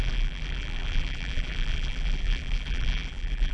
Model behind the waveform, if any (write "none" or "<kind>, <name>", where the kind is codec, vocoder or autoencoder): vocoder, BigVGAN v2